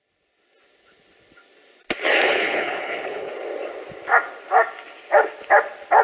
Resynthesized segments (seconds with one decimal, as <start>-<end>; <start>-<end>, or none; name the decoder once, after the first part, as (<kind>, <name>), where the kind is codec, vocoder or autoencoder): 2.2-3.3 (codec, HILCodec)